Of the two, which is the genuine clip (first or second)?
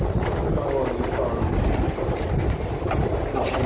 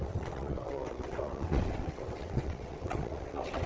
first